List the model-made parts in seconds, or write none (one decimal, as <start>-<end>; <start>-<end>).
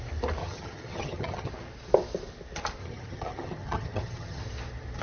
0.4-1.5; 2.8-4.4